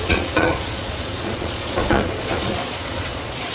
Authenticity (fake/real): fake